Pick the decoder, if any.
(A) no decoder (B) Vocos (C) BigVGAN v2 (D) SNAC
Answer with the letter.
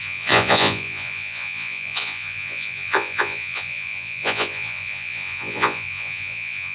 B